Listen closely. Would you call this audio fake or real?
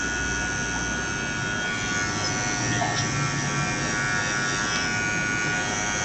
real